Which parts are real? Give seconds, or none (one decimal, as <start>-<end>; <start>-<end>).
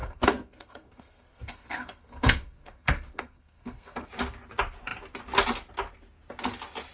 4.1-6.9